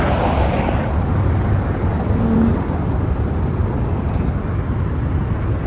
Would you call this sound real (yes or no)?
yes